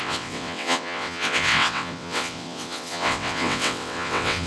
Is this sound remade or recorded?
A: remade